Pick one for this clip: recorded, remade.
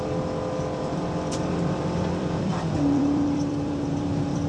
remade